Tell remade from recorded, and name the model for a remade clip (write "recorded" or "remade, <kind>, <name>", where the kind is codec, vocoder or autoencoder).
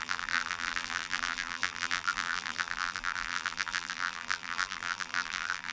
remade, vocoder, BigVGAN v2